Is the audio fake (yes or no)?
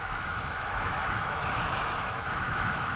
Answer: yes